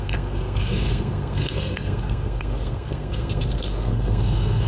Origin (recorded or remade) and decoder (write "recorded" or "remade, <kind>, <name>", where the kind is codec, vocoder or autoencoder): remade, codec, SNAC